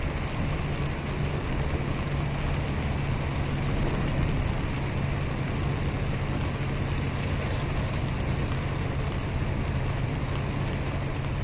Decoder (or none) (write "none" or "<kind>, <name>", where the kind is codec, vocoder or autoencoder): none